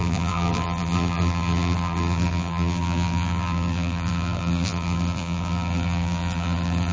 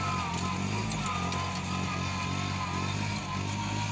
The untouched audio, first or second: second